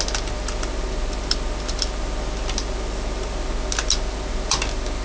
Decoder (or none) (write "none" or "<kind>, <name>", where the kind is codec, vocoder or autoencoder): none